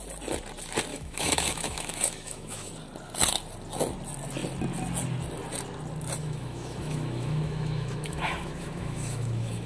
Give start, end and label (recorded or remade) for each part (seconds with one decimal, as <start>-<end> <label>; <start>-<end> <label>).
0.0-0.9 recorded; 0.9-2.7 remade; 2.7-6.2 recorded; 6.2-9.7 remade